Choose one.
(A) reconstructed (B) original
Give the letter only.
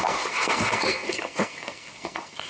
A